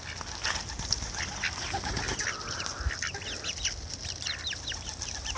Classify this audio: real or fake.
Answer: real